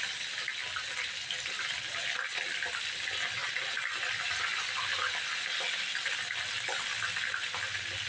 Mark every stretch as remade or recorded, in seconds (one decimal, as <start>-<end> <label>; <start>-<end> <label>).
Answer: 0.0-8.1 recorded